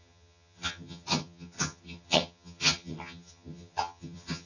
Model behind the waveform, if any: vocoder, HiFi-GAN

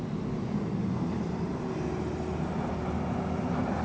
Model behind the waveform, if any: none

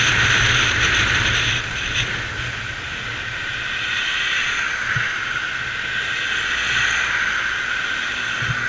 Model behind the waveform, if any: none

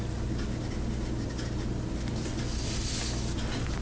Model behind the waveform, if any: none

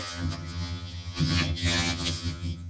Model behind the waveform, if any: vocoder, HiFi-GAN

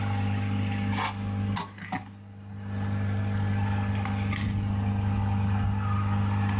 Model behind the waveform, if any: none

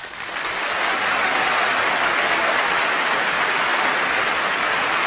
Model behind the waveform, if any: none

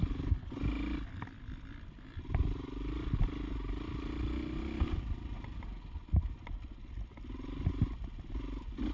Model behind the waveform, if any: none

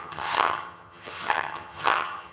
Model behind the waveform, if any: vocoder, HiFi-GAN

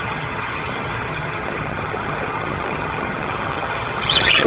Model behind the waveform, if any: vocoder, HiFi-GAN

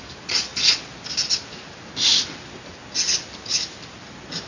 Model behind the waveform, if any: none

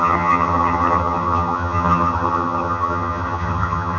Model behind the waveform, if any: vocoder, HiFi-GAN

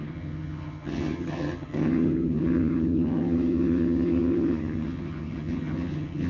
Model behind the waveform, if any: vocoder, HiFi-GAN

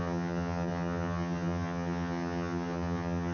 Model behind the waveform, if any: vocoder, HiFi-GAN